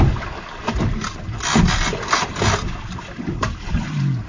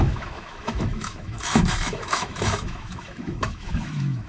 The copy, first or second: second